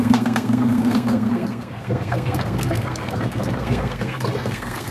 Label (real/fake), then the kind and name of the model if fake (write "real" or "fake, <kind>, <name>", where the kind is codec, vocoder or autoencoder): fake, codec, SNAC